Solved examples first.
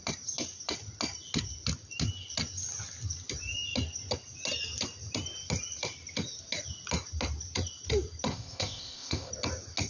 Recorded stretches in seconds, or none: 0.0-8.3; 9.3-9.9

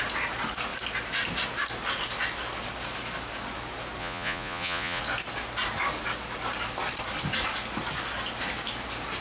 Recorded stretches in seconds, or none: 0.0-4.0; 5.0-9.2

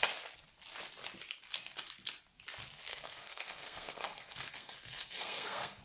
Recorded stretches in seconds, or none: 0.0-2.9

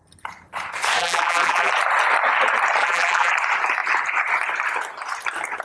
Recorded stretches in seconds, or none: 0.0-1.0; 1.7-2.8; 3.3-5.6

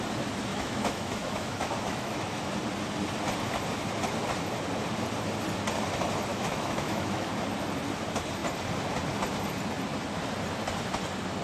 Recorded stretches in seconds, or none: 0.0-0.5; 2.5-6.3; 7.3-11.4

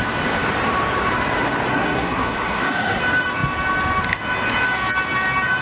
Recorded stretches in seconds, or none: 0.0-1.7; 3.0-5.6

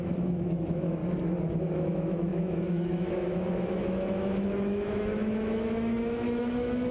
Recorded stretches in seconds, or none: 1.0-1.6

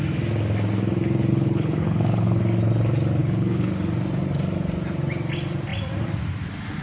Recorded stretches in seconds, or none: 0.0-1.3; 2.4-3.2; 3.7-6.8